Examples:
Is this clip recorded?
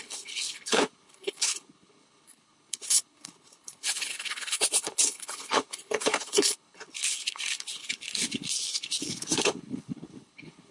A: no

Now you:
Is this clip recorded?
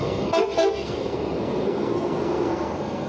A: no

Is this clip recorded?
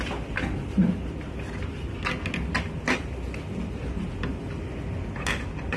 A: yes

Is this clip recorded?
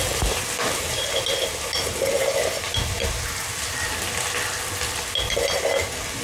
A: yes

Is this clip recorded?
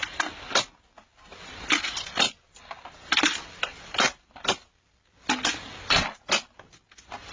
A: yes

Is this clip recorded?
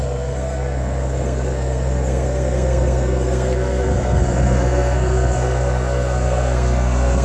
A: no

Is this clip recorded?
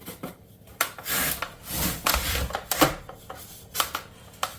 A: yes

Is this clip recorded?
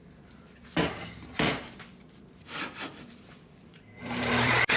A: no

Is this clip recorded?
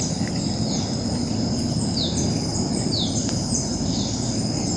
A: yes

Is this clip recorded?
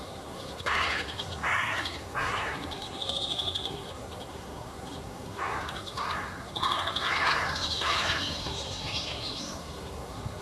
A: no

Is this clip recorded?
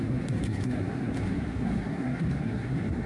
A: no